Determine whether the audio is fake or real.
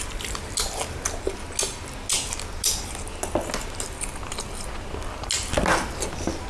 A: real